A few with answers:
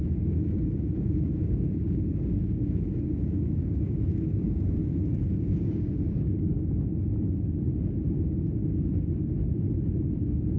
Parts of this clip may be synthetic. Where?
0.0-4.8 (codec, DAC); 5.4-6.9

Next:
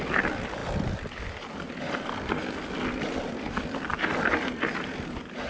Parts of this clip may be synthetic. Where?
none

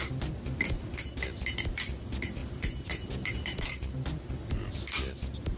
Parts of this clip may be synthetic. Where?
2.4-4.3 (vocoder, BigVGAN v2)

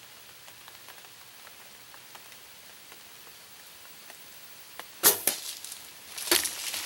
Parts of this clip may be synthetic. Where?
3.3-4.9 (vocoder, BigVGAN v2)

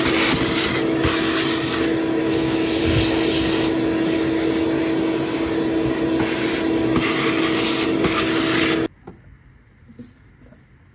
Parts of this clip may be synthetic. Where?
2.2-2.8 (autoencoder, DAC-VAE)

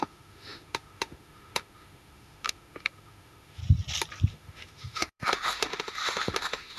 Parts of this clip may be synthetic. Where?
0.0-3.6 (autoencoder, DAC-VAE); 4.3-6.8

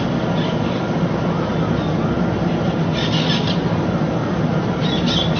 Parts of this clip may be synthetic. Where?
none

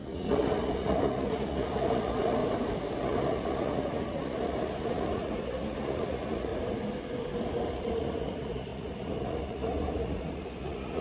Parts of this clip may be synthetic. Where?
0.0-2.4 (vocoder, Vocos); 3.0-6.5; 7.7-11.0